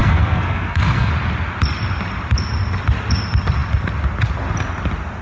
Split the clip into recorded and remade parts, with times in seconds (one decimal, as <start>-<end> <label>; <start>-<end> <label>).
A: 0.0-1.1 remade; 1.1-5.2 recorded